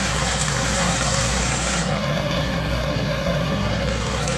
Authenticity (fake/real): fake